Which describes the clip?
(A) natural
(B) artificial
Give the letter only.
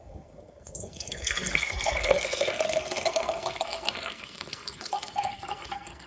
B